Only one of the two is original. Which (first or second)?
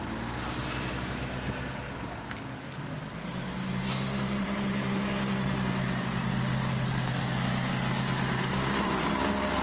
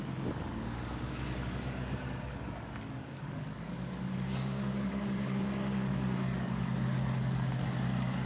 first